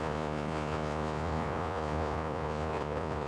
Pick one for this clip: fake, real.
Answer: fake